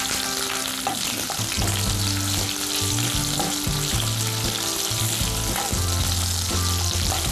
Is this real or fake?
real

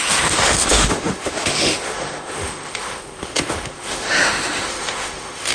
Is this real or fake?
fake